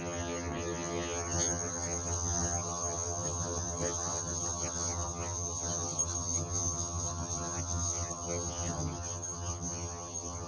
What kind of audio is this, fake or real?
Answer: fake